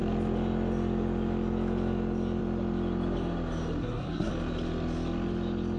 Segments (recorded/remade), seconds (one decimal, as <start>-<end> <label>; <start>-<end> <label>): 0.0-3.8 recorded; 3.8-4.3 remade; 4.3-5.8 recorded